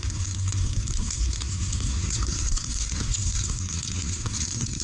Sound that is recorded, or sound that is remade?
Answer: remade